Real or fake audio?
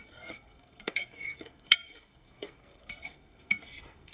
fake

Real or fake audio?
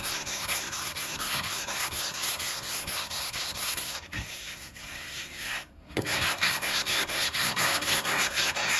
fake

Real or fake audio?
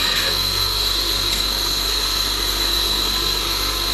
fake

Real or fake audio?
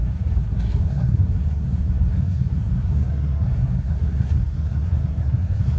fake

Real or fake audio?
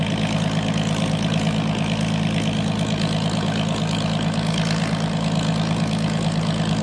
real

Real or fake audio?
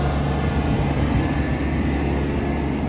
real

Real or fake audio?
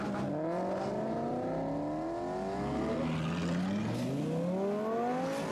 real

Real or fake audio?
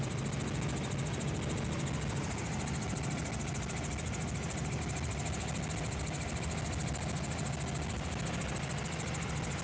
real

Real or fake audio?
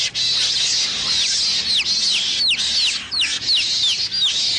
real